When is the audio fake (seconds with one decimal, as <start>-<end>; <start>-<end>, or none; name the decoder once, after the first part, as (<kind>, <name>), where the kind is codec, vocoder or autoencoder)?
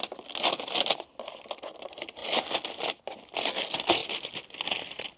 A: none